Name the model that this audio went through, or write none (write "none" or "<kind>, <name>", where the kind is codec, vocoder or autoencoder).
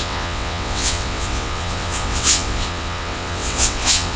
vocoder, WaveNeXt